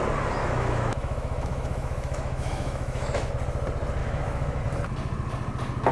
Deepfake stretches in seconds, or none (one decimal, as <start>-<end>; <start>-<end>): 0.4-3.3; 4.0-4.6